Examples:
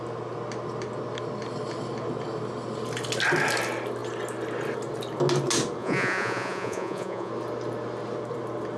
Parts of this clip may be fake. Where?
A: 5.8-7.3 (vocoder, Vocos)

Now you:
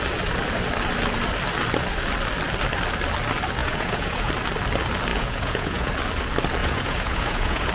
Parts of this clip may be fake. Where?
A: 3.6-4.3 (vocoder, Vocos); 5.1-5.9; 6.6-7.7

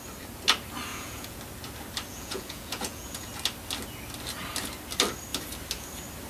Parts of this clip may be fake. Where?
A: 0.9-1.4 (vocoder, Vocos); 2.1-3.3

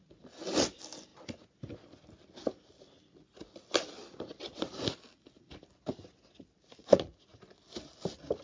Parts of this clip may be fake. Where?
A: 6.8-7.4 (vocoder, Vocos)

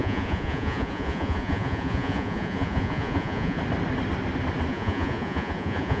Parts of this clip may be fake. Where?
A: 0.0-3.6 (vocoder, Vocos); 4.7-6.0

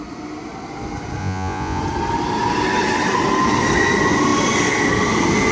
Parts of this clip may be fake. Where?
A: 1.2-1.8 (vocoder, Vocos)

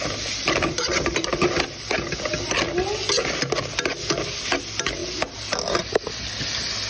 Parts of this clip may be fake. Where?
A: none